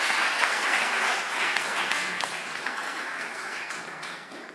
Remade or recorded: remade